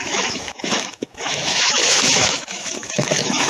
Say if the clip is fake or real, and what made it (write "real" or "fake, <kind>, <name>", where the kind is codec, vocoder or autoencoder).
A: fake, autoencoder, DAC-VAE